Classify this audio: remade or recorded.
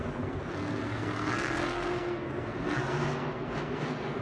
remade